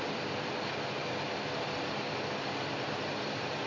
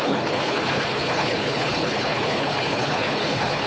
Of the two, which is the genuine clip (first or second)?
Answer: first